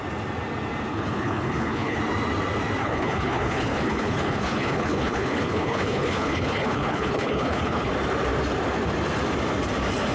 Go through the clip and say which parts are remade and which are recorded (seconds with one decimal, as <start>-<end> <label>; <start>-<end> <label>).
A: 0.0-0.9 recorded; 0.9-2.0 remade; 2.0-2.8 recorded; 2.8-7.9 remade; 7.9-10.1 recorded